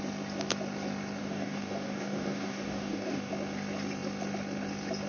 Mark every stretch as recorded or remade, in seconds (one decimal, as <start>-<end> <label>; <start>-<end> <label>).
0.0-1.2 recorded; 1.2-3.3 remade; 3.3-5.1 recorded